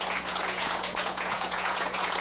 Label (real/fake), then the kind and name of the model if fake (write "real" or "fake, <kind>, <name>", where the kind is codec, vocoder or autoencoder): fake, vocoder, Vocos